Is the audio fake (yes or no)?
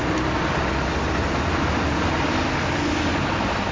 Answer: no